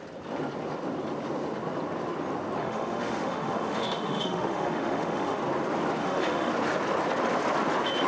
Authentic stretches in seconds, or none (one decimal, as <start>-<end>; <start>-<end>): 0.0-2.6; 5.4-6.0; 6.5-8.1